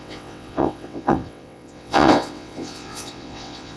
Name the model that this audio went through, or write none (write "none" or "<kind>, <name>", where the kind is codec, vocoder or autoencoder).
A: vocoder, WaveNeXt